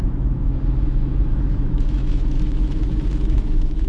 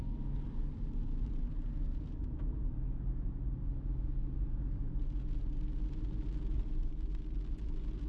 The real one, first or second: second